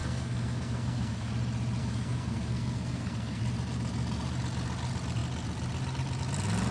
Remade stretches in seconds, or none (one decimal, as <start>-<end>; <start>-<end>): 0.0-1.3; 1.8-3.4